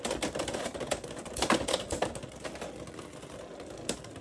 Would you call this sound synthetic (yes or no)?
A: no